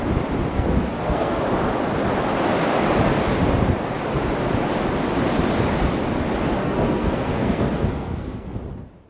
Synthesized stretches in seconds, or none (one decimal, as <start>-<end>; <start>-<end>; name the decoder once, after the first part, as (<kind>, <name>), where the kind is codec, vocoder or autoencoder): 0.5-1.4 (codec, SNAC); 6.6-8.5